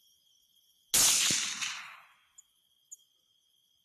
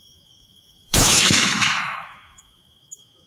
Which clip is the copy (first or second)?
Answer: second